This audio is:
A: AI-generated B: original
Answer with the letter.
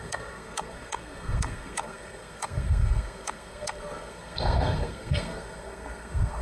A